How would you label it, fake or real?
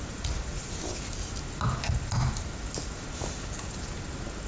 real